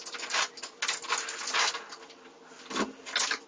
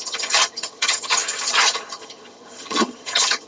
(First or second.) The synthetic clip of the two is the second